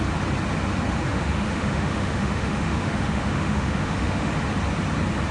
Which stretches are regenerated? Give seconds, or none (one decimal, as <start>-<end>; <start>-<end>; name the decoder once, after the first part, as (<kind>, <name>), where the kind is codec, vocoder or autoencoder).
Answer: 1.1-4.3 (autoencoder, DAC-VAE)

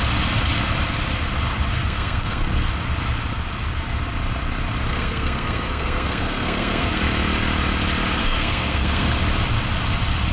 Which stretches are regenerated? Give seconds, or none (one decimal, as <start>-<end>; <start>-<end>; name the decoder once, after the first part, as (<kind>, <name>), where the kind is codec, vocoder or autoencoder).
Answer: 1.7-2.4 (codec, SNAC); 4.9-7.0; 8.2-9.1

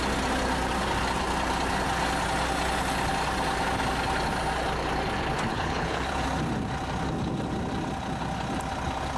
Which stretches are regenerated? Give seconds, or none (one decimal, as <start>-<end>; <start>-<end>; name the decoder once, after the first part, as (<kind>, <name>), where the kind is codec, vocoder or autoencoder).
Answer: 5.5-6.1 (codec, HILCodec)

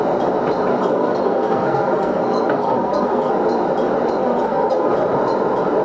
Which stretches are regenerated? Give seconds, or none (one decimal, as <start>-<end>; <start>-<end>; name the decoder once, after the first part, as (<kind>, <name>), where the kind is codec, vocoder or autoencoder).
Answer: 0.7-3.3 (codec, SNAC); 4.2-4.9

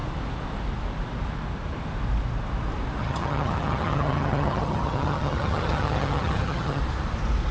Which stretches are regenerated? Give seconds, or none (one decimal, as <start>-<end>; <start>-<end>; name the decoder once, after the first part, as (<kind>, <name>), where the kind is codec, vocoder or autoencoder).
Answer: 3.0-6.8 (vocoder, HiFi-GAN)

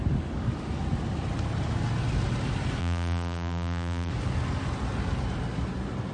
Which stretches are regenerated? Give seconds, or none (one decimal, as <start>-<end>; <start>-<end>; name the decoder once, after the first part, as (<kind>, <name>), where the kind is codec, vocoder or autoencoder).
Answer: 2.8-4.1 (vocoder, BigVGAN v2)

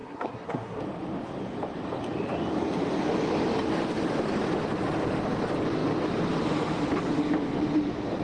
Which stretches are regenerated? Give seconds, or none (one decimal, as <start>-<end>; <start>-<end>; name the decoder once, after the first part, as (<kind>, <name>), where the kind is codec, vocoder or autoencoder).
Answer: 0.0-0.8 (codec, SNAC)